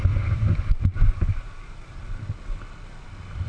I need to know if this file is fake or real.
real